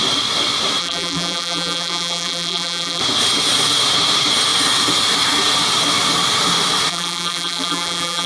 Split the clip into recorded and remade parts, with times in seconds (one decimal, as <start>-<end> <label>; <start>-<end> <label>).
0.0-0.8 recorded; 0.8-3.0 remade; 3.0-6.9 recorded; 6.9-8.3 remade